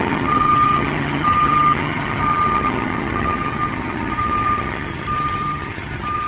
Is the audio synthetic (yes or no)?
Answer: yes